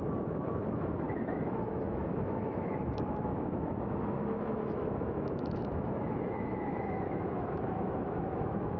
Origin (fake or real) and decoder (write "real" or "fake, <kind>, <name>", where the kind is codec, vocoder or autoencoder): fake, autoencoder, DAC-VAE